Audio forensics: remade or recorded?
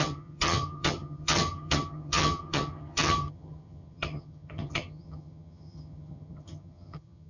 remade